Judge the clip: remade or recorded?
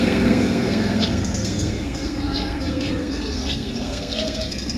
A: remade